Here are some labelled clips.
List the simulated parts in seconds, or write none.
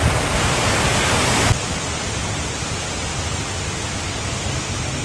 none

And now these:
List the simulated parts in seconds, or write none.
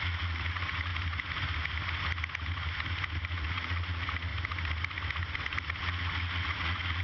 0.0-0.9 (vocoder, Vocos); 3.2-4.3; 5.8-7.0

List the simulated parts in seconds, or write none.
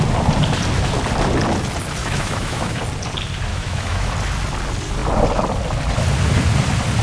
2.0-2.8 (autoencoder, DAC-VAE); 3.5-4.1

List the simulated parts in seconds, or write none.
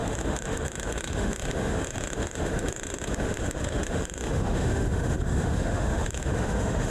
0.0-6.9 (autoencoder, DAC-VAE)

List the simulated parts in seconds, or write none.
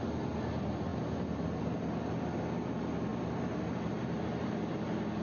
3.1-4.5 (vocoder, BigVGAN v2)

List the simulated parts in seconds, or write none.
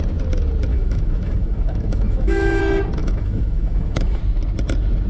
0.7-2.6 (autoencoder, DAC-VAE); 3.0-4.2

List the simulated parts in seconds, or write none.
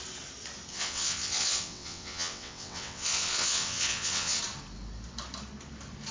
0.7-4.4 (vocoder, WaveNeXt)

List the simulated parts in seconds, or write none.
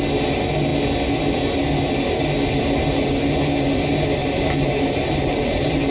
4.2-5.9 (vocoder, BigVGAN v2)